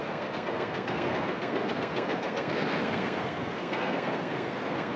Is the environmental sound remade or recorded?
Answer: remade